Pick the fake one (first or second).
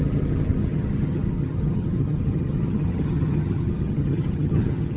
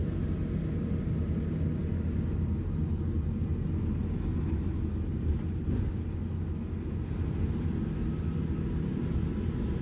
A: first